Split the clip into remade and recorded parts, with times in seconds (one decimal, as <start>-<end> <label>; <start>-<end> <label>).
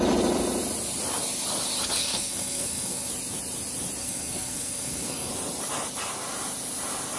0.0-2.0 recorded; 2.0-3.1 remade; 3.1-4.0 recorded; 4.0-5.3 remade; 5.3-7.2 recorded